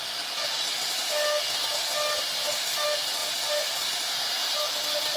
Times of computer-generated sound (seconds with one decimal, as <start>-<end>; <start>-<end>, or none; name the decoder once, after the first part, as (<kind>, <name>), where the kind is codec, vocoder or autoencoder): 3.2-3.7 (vocoder, BigVGAN v2); 4.4-5.2